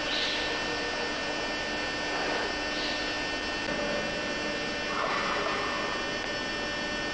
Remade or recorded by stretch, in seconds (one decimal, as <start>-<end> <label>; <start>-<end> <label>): 0.0-7.1 recorded